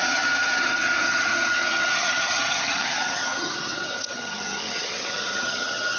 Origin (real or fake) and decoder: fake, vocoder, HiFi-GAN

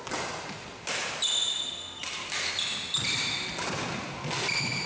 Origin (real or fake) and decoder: real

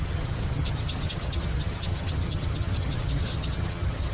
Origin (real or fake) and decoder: fake, vocoder, HiFi-GAN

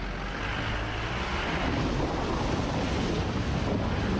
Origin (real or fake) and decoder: real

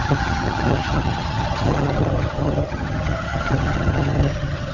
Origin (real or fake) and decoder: fake, vocoder, HiFi-GAN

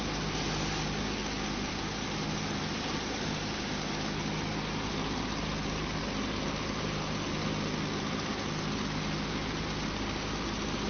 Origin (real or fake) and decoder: real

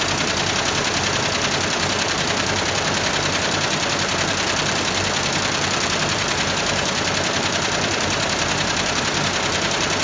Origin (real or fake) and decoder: real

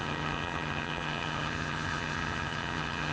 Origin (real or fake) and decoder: fake, vocoder, HiFi-GAN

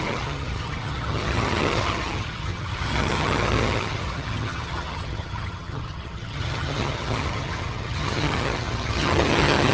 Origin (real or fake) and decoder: fake, vocoder, HiFi-GAN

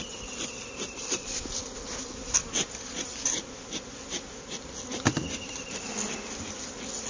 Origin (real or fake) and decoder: real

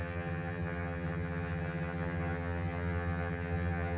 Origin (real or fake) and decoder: fake, vocoder, HiFi-GAN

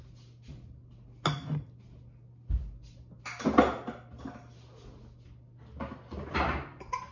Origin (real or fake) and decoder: real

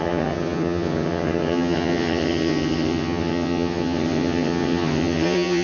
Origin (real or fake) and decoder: fake, vocoder, HiFi-GAN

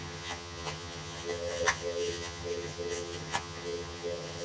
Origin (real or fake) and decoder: fake, vocoder, HiFi-GAN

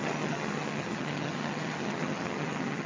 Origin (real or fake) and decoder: fake, vocoder, HiFi-GAN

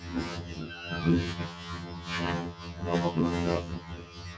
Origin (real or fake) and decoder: fake, vocoder, HiFi-GAN